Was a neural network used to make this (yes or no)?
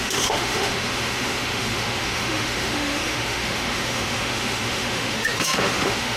yes